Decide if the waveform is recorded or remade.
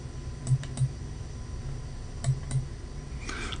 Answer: recorded